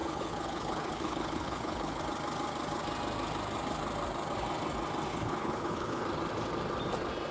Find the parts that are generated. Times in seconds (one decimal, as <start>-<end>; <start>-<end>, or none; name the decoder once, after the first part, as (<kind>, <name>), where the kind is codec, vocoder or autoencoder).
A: 0.0-2.0 (codec, HILCodec); 5.1-6.0